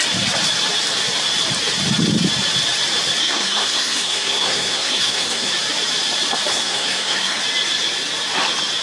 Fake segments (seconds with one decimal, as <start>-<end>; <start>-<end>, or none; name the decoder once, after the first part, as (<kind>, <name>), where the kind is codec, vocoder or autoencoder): 3.2-5.5 (codec, SNAC); 6.5-7.4